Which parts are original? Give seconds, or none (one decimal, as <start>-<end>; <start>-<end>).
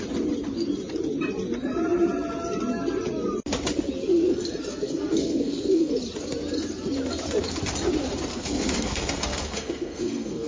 0.0-4.7; 5.9-8.3